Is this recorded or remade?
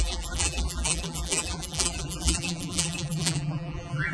remade